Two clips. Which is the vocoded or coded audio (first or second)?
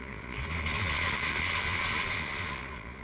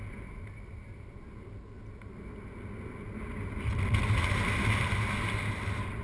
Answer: first